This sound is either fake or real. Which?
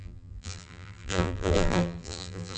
fake